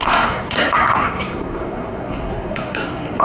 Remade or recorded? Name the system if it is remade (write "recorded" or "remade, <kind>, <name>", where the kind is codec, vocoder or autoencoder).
remade, codec, SNAC